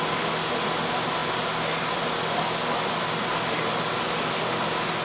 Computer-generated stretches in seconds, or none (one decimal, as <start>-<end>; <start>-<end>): none